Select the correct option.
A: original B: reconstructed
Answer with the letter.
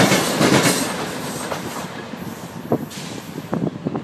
A